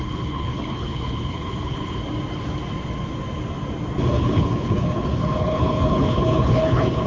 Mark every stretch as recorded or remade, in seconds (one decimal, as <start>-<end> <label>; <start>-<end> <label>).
0.0-2.0 remade; 2.0-4.1 recorded; 4.1-7.1 remade